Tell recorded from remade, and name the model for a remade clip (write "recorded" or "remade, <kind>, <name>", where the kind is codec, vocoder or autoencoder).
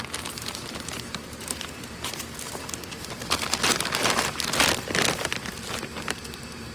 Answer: remade, vocoder, BigVGAN v2